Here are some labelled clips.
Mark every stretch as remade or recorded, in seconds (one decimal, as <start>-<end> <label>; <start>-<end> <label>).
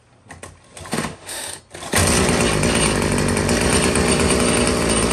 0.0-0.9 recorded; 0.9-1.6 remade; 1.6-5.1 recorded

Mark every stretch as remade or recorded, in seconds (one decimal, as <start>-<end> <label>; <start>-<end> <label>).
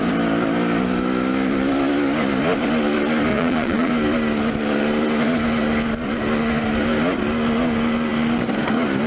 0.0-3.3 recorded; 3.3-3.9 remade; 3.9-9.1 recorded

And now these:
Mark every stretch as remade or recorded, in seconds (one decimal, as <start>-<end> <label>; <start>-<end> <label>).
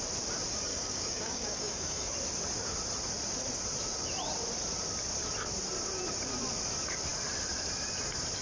0.0-0.7 recorded; 0.7-2.1 remade; 2.1-8.4 recorded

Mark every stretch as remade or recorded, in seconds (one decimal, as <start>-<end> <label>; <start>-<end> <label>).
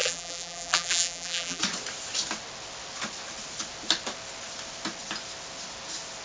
0.0-1.6 remade; 1.6-6.2 recorded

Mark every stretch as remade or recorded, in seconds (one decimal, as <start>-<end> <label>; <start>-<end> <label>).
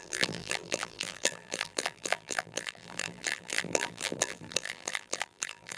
0.0-5.8 remade